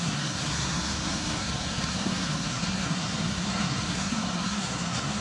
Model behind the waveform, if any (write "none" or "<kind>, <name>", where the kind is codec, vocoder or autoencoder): codec, SNAC